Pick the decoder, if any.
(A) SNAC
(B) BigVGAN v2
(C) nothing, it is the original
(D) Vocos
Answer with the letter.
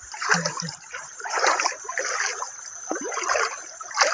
B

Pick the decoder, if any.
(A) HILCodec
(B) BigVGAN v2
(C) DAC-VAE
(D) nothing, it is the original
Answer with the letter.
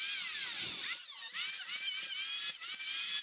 D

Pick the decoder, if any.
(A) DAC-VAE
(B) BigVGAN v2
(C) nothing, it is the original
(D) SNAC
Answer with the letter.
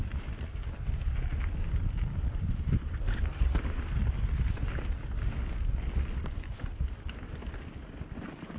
B